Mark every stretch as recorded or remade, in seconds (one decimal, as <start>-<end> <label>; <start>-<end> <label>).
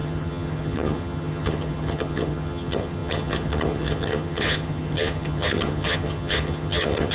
0.0-7.1 remade